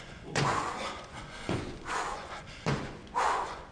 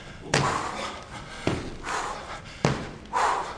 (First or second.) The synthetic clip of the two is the first